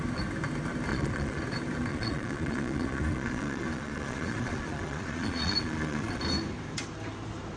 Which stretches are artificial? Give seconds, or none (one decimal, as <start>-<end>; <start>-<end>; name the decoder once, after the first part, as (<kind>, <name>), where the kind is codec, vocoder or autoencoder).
0.9-1.4 (vocoder, Vocos); 1.9-6.2